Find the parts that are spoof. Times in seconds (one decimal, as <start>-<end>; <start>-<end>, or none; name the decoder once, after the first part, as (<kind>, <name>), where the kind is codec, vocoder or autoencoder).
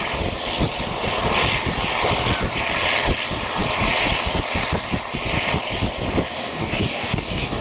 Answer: 6.3-7.6 (codec, DAC)